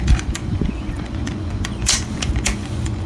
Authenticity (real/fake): fake